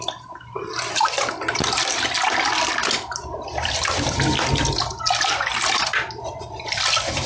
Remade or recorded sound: recorded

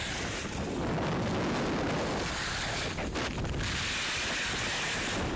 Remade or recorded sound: recorded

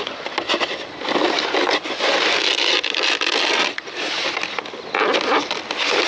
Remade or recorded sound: recorded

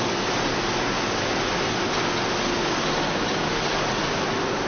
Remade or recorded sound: recorded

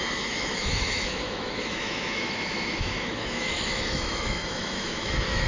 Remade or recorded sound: remade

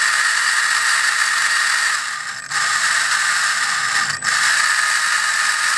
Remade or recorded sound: recorded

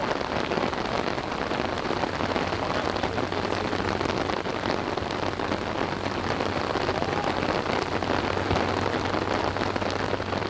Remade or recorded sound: recorded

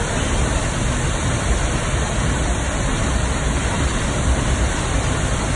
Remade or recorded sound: recorded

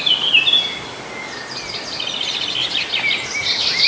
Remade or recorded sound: recorded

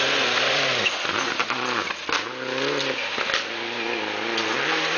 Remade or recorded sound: recorded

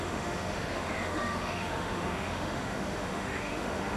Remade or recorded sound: remade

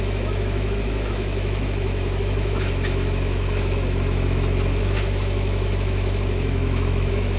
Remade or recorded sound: remade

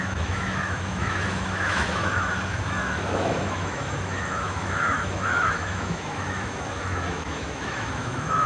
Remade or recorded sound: remade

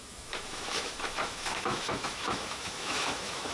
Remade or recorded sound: remade